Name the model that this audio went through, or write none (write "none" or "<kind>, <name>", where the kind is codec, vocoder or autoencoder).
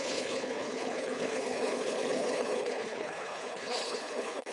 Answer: codec, HILCodec